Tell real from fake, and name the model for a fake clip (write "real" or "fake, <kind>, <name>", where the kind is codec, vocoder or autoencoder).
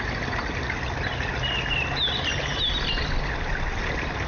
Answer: real